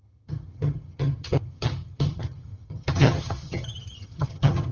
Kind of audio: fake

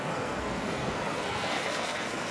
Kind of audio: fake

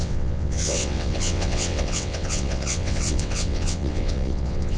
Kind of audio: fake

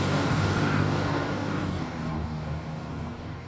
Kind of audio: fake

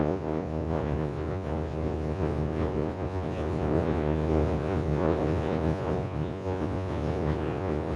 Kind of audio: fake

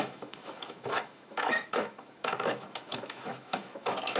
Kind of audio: fake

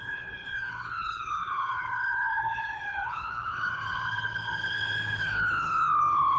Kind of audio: fake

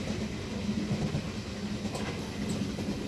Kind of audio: real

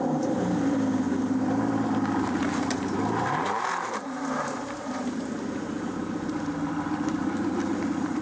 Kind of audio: fake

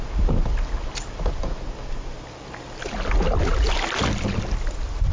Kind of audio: real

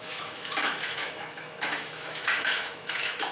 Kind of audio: fake